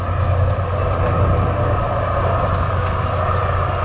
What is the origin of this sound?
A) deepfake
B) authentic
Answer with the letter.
B